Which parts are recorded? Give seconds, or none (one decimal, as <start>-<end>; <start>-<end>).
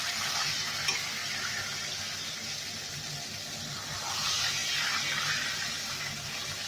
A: 0.0-6.7